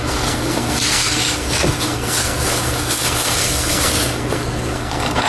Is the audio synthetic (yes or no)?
yes